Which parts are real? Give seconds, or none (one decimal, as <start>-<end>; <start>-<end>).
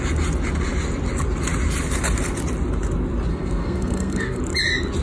0.0-3.3; 4.4-5.0